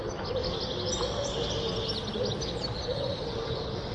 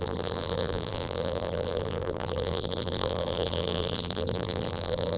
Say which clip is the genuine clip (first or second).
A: first